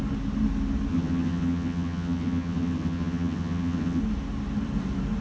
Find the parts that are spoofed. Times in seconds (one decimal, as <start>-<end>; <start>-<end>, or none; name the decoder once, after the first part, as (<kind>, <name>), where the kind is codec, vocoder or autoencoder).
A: 0.9-4.0 (vocoder, HiFi-GAN)